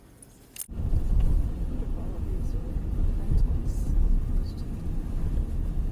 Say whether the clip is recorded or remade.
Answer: remade